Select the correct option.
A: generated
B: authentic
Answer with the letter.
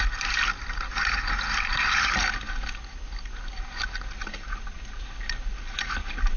B